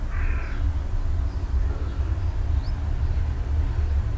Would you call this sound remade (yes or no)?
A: no